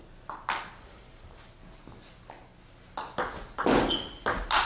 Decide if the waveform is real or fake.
real